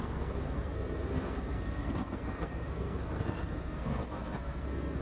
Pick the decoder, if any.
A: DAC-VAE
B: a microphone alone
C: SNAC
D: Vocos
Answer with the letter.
C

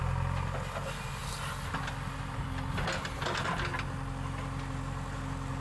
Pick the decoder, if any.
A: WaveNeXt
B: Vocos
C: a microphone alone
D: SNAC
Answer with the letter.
C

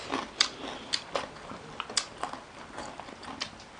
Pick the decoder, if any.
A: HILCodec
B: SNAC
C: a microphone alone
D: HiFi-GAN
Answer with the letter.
C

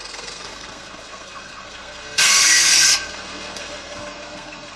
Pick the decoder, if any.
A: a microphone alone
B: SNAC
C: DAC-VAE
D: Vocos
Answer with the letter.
B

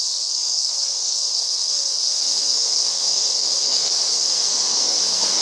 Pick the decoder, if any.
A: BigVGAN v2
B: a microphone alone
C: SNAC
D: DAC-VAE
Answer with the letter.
C